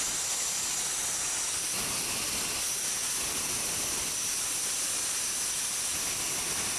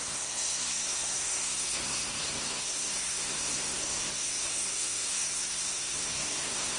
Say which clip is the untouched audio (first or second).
first